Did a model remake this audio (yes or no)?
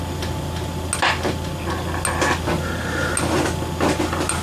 no